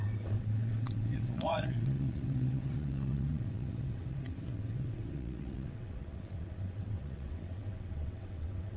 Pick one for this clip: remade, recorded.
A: remade